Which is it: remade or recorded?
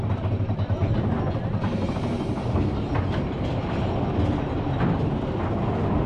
recorded